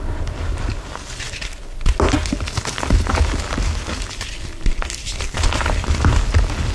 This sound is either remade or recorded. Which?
recorded